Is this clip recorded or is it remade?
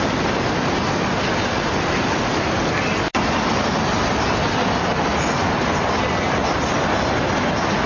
recorded